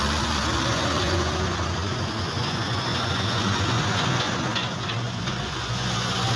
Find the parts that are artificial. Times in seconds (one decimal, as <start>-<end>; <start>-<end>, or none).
0.0-6.4